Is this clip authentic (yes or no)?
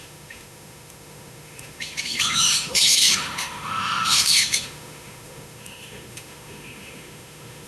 no